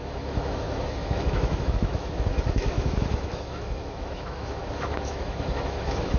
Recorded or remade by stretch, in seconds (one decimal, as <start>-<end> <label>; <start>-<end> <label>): 0.0-6.2 remade